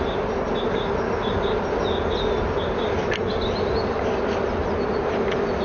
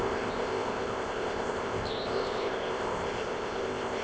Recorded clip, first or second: first